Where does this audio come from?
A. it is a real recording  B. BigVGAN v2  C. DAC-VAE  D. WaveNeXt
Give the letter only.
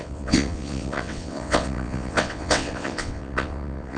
D